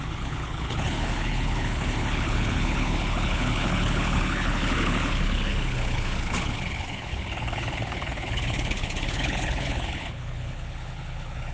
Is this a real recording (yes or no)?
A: no